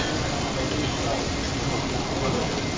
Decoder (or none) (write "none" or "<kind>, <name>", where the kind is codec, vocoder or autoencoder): none